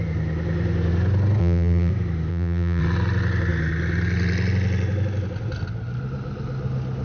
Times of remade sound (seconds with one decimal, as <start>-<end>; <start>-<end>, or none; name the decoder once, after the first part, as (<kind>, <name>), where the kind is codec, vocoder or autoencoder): 1.4-1.9 (vocoder, BigVGAN v2); 2.3-2.8